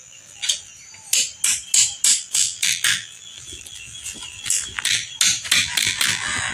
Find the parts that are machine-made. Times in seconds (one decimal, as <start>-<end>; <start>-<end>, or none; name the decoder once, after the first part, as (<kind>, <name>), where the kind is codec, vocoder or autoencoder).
0.0-0.7 (vocoder, BigVGAN v2); 2.2-5.0; 5.6-6.5

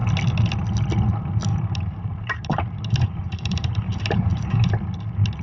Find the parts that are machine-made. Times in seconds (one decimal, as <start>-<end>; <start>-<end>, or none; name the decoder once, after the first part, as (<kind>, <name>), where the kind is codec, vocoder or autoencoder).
1.5-4.7 (vocoder, BigVGAN v2)

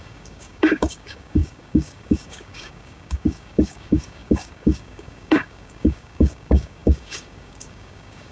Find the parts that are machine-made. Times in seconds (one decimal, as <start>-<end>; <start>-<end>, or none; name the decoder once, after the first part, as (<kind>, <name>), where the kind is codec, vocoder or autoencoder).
0.0-8.3 (codec, DAC)

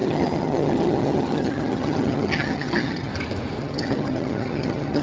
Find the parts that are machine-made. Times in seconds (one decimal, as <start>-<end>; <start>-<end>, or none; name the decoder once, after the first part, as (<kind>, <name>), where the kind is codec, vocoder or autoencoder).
0.0-3.1 (vocoder, HiFi-GAN); 3.6-5.0

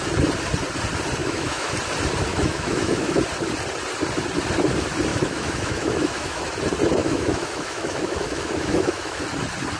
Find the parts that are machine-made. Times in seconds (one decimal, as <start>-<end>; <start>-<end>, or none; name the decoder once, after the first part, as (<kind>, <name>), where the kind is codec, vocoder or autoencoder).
1.2-1.7 (autoencoder, DAC-VAE); 2.3-3.2; 5.1-6.4; 7.0-9.2